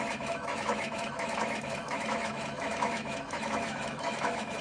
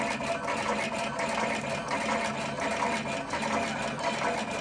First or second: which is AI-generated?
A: first